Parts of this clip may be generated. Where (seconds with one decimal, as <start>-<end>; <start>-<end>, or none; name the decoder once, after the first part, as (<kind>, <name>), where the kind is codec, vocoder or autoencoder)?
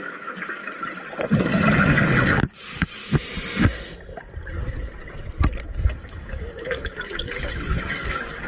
0.0-0.6 (codec, DAC); 1.4-3.0; 5.8-8.5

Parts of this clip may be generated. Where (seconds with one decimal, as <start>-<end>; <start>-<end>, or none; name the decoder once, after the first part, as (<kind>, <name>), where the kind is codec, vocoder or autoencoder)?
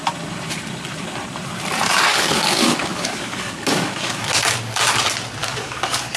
2.1-4.3 (codec, DAC); 5.4-6.2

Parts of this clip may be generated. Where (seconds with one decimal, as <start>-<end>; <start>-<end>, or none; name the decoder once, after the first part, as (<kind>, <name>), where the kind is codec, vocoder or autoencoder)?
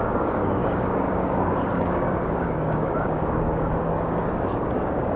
0.0-5.2 (codec, DAC)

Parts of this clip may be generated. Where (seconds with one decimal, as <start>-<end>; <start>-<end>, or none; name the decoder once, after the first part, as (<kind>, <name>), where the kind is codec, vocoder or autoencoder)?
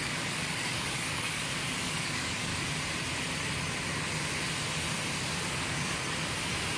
0.0-2.5 (codec, DAC)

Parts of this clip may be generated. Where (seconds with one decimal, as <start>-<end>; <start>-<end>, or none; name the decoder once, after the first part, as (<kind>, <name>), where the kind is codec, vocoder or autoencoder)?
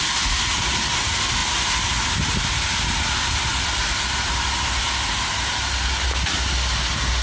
none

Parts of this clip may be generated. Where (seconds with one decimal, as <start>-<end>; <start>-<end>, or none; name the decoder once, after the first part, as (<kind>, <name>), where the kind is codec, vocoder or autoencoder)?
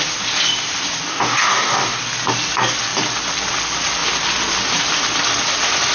1.1-2.0 (codec, DAC)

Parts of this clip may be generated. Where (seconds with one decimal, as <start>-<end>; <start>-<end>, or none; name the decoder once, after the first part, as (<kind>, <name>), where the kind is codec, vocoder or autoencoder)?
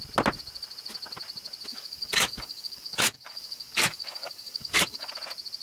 1.7-5.1 (codec, DAC)